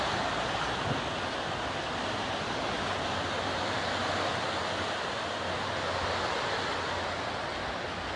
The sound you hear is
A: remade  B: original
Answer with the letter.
B